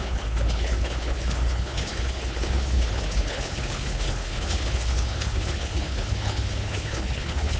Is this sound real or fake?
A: fake